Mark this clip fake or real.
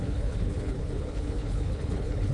fake